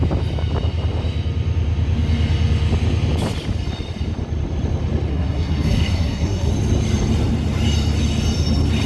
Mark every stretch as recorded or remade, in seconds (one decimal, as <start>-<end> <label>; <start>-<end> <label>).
0.0-5.1 recorded; 5.1-6.5 remade; 6.5-8.9 recorded